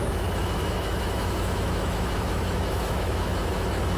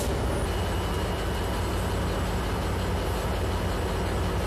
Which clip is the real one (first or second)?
second